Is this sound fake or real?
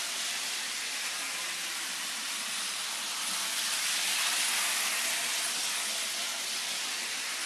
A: real